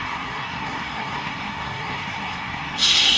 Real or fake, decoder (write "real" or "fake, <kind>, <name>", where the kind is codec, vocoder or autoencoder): fake, codec, SNAC